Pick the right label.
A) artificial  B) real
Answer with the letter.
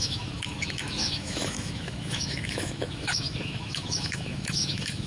A